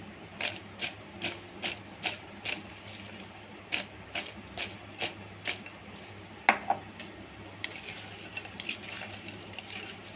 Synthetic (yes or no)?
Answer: no